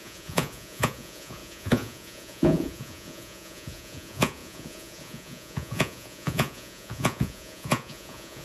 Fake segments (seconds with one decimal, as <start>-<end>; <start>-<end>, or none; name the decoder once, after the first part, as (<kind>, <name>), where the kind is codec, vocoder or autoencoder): 0.0-8.4 (vocoder, Vocos)